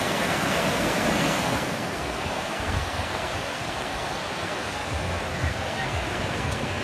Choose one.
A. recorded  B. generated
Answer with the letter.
B